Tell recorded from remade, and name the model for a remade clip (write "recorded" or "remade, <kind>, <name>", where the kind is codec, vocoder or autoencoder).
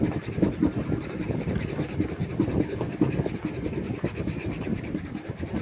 recorded